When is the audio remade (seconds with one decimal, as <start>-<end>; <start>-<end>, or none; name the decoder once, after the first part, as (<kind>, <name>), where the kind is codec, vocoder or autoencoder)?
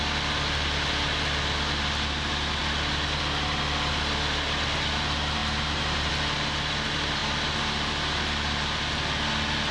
5.4-6.1 (vocoder, BigVGAN v2); 7.2-8.8